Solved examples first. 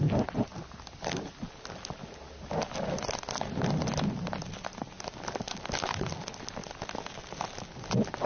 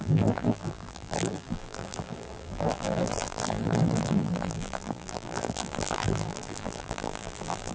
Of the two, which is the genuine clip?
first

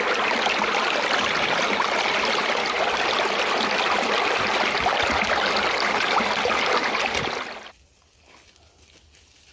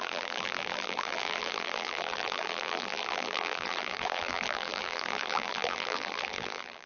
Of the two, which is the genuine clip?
first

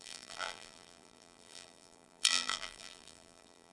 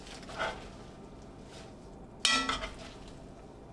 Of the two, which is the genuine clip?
second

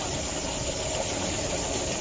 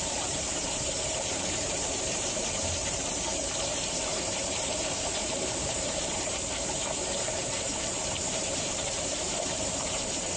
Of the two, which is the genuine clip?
first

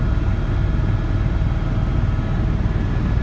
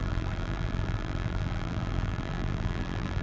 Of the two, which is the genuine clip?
first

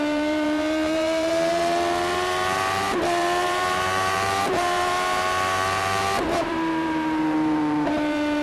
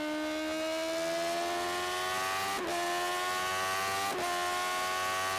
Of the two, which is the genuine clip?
second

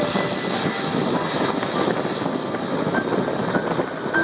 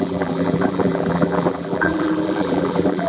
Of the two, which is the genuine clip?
first